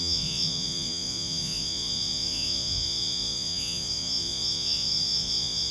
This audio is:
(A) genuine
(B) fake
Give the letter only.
B